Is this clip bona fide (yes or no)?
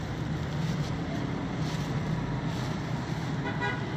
yes